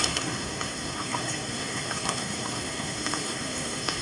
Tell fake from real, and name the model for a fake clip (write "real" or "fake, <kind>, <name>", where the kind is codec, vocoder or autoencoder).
fake, codec, SNAC